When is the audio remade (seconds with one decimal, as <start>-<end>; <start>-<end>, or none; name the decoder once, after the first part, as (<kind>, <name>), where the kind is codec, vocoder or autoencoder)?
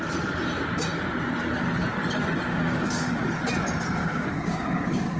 2.5-3.1 (codec, DAC); 4.0-5.2